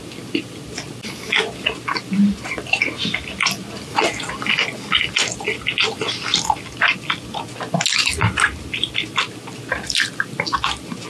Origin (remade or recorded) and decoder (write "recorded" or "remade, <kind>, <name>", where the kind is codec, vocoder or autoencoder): recorded